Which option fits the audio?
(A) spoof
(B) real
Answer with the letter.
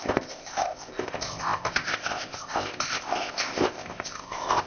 A